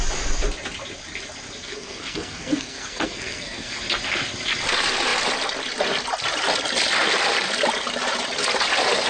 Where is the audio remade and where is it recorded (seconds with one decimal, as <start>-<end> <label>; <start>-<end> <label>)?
0.0-1.6 recorded; 1.6-3.8 remade; 3.8-9.1 recorded